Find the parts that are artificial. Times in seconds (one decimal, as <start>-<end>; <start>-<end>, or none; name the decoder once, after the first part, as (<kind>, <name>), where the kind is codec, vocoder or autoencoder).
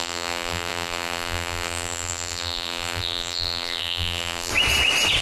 0.0-4.5 (vocoder, BigVGAN v2)